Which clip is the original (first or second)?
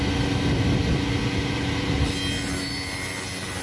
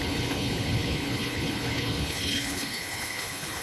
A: first